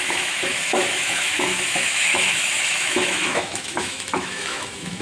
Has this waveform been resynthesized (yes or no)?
yes